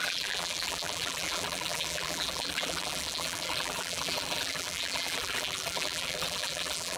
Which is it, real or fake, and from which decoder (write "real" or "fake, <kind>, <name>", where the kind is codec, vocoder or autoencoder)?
fake, vocoder, BigVGAN v2